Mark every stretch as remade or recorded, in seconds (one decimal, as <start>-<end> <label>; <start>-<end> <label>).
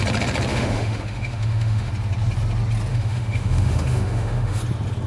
0.0-0.5 recorded; 0.5-1.9 remade; 1.9-2.9 recorded; 2.9-4.6 remade; 4.6-5.1 recorded